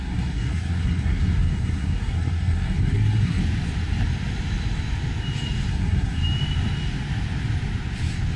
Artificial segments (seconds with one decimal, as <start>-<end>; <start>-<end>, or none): 0.0-3.4; 5.7-6.2